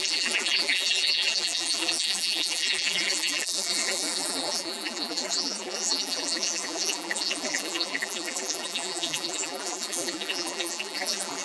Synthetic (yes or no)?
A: yes